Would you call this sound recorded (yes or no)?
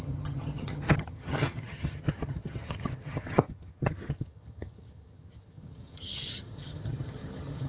no